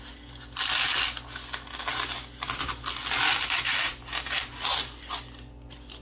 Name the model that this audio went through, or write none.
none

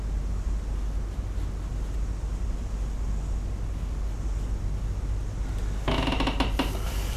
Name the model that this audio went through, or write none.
none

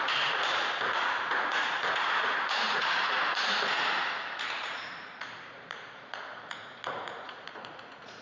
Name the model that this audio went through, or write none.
vocoder, Vocos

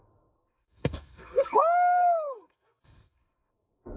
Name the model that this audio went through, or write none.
codec, SNAC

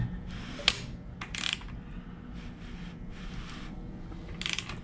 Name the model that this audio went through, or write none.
none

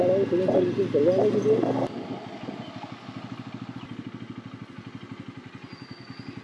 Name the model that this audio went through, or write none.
none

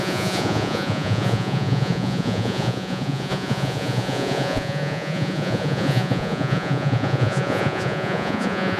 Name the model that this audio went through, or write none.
vocoder, Vocos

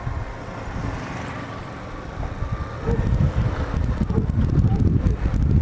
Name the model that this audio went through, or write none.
none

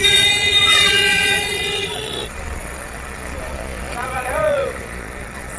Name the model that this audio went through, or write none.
vocoder, Vocos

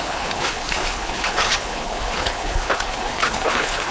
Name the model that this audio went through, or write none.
codec, HILCodec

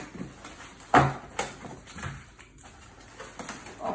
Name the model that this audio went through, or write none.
none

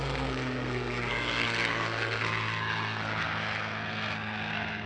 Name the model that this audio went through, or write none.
codec, SNAC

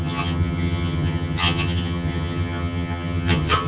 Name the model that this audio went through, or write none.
vocoder, HiFi-GAN